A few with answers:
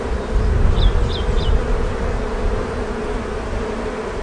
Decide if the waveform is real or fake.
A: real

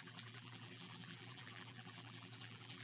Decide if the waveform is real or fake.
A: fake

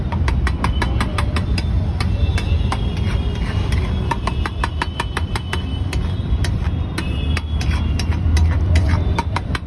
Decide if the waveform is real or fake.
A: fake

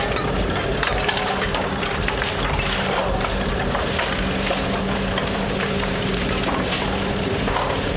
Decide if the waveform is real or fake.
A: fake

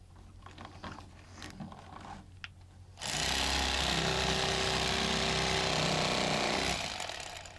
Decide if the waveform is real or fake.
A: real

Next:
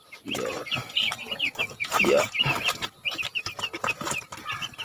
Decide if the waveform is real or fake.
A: fake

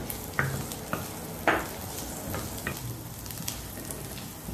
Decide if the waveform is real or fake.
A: real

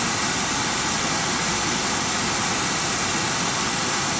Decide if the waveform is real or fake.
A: real